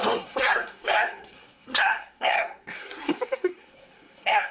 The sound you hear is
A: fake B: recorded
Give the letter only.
A